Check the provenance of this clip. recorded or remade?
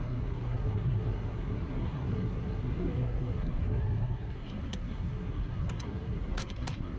remade